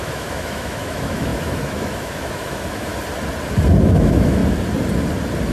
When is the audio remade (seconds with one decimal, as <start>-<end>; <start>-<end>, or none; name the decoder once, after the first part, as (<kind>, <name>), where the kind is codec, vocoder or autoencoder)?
0.0-2.9 (autoencoder, DAC-VAE); 3.8-4.4